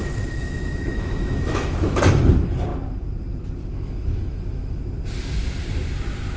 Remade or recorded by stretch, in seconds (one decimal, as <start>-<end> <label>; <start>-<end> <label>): 0.0-2.0 remade; 2.0-3.6 recorded; 3.6-4.8 remade; 4.8-6.4 recorded